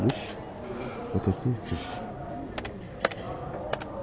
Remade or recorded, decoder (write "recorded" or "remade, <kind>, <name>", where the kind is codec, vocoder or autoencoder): recorded